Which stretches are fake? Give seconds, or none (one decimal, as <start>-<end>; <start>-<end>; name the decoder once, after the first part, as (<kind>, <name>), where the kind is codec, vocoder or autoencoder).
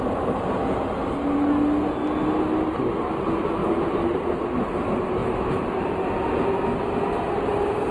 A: 5.2-5.9 (vocoder, BigVGAN v2)